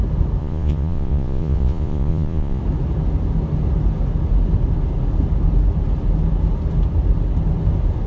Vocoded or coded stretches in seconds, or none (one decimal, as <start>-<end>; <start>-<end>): 0.4-2.6